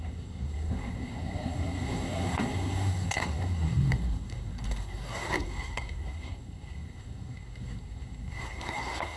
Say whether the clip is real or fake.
fake